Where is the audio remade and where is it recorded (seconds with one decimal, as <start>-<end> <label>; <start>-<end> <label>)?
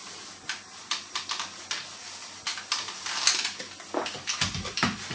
0.0-0.8 remade; 0.8-5.1 recorded